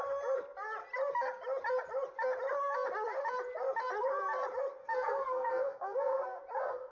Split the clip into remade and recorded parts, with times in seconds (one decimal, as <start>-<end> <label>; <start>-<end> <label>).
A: 0.0-4.8 recorded; 4.8-6.4 remade; 6.4-6.9 recorded